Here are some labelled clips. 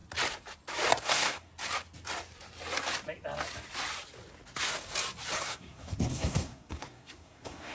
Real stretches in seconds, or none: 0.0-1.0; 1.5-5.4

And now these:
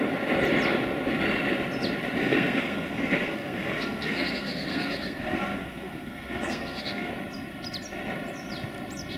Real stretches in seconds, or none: 0.0-2.2; 7.1-9.2

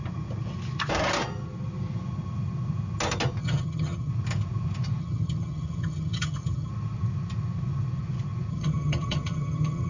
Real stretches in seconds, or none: 0.0-3.4; 4.1-5.0; 6.7-8.5

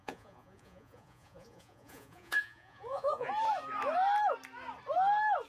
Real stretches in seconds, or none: 3.3-5.5

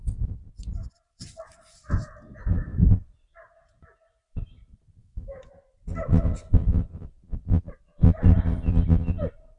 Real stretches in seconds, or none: 0.0-5.0; 5.5-9.6